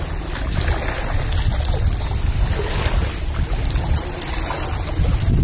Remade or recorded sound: recorded